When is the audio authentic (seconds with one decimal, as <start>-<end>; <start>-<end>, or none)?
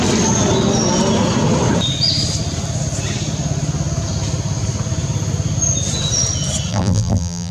0.0-6.7